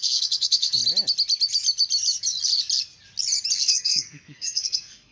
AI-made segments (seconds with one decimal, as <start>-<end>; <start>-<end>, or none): 0.0-0.8; 3.6-5.1